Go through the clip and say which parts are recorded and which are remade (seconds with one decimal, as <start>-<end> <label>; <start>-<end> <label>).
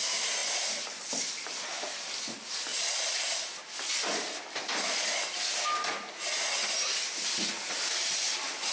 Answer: 0.0-2.7 recorded; 2.7-3.2 remade; 3.2-8.7 recorded